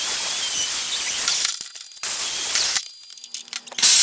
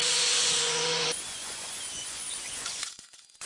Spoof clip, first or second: second